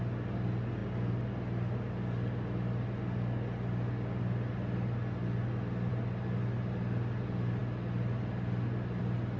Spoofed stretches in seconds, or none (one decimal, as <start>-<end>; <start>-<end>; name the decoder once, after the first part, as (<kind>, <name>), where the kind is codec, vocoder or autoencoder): none